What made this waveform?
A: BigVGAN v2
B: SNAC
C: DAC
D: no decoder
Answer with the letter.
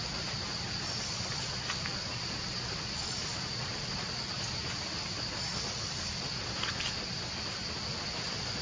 D